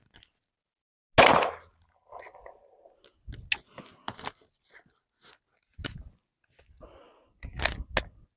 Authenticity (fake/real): real